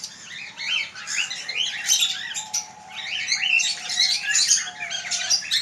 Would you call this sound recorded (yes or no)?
yes